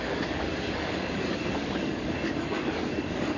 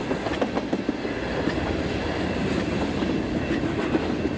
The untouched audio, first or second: second